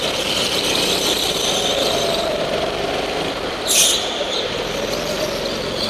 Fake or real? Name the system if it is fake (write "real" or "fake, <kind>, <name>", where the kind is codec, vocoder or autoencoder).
real